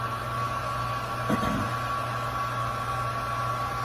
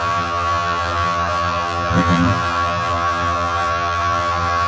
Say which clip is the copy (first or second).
second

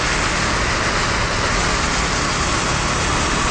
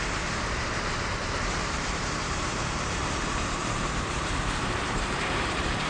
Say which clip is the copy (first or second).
second